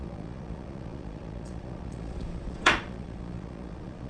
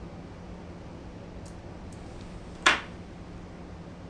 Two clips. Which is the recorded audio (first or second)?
second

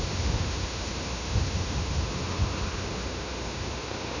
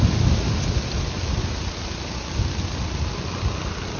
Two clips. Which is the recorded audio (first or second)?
second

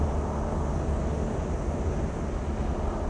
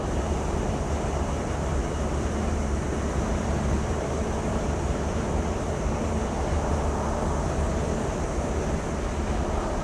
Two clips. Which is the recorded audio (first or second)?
first